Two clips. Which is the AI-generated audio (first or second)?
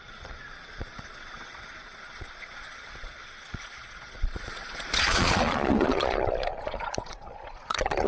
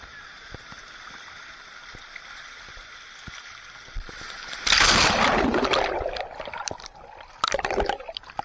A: first